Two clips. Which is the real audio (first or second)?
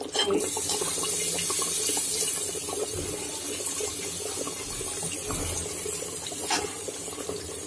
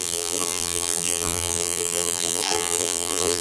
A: first